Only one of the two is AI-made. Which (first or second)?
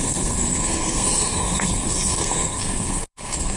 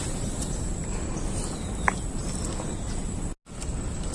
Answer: first